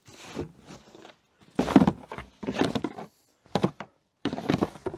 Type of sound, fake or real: fake